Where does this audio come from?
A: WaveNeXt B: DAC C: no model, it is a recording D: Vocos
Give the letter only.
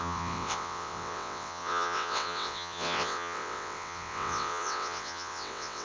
A